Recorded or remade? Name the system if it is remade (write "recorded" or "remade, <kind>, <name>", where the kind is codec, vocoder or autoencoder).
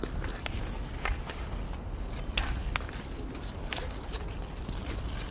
recorded